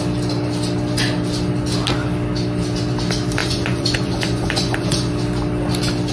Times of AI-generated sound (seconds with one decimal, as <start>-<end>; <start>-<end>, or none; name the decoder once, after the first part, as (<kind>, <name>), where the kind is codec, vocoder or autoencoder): 3.4-5.1 (vocoder, Vocos)